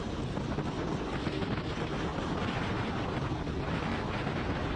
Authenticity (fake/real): real